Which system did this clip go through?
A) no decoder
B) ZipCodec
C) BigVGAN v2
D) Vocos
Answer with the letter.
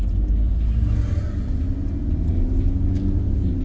A